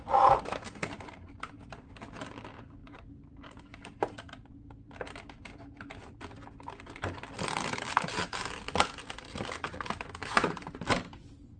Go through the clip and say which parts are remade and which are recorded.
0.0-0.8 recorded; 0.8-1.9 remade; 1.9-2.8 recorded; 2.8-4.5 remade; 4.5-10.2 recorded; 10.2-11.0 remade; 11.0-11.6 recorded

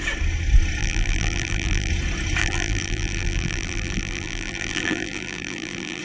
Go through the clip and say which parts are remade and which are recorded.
0.0-0.8 recorded; 0.8-1.9 remade; 1.9-2.4 recorded; 2.4-6.0 remade

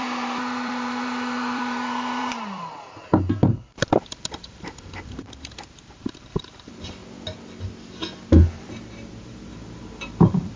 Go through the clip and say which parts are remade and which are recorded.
0.0-7.0 remade; 7.0-9.2 recorded; 9.2-10.6 remade

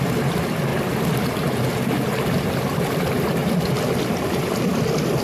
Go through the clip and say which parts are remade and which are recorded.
0.0-0.7 remade; 0.7-2.8 recorded; 2.8-3.4 remade; 3.4-4.1 recorded; 4.1-5.2 remade

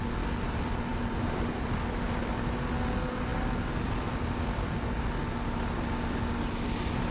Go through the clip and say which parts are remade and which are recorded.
0.0-0.9 recorded; 0.9-1.7 remade; 1.7-7.1 recorded

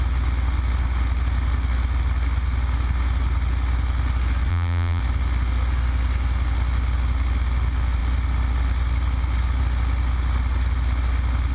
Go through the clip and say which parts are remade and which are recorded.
0.0-4.5 recorded; 4.5-5.0 remade; 5.0-11.5 recorded